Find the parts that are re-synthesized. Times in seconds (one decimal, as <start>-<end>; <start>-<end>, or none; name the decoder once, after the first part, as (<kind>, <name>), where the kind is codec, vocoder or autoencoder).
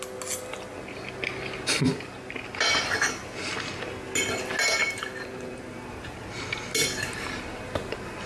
4.8-6.4 (vocoder, BigVGAN v2)